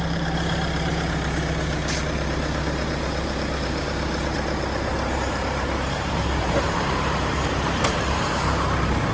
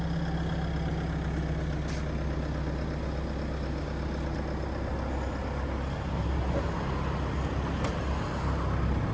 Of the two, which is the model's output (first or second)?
first